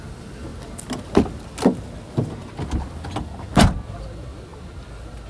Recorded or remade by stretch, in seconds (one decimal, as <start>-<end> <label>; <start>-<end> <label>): 0.0-5.3 recorded